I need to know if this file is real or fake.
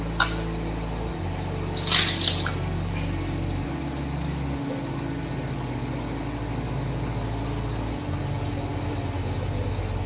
real